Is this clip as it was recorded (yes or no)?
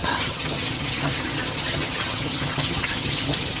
no